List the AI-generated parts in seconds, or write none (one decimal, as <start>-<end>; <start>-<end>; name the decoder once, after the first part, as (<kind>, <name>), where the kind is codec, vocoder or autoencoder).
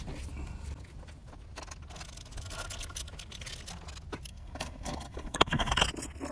4.3-5.8 (codec, SNAC)